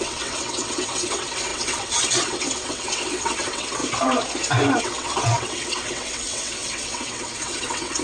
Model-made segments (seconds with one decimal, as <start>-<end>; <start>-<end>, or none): 0.0-3.8; 4.8-8.0